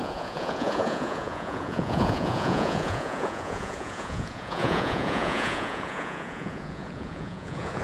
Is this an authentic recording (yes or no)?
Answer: no